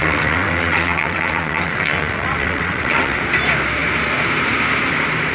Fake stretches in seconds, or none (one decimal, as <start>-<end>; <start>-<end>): 0.0-3.2